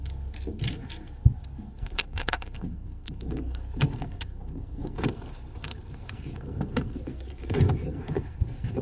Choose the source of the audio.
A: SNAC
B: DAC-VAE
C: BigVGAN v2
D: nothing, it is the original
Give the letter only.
A